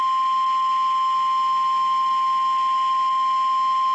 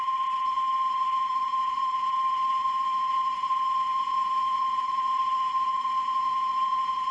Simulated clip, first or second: second